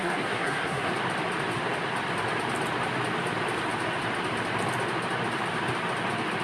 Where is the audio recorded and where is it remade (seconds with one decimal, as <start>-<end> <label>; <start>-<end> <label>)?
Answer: 0.0-0.9 remade; 0.9-6.4 recorded